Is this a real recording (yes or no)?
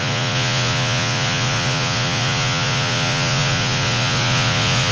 no